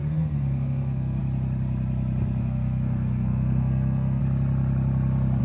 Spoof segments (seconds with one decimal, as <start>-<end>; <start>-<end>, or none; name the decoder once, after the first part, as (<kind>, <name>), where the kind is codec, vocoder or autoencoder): 0.0-1.2 (codec, SNAC); 2.4-4.2